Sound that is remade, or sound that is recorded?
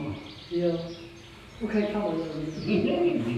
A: recorded